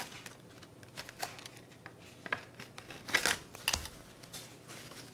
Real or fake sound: real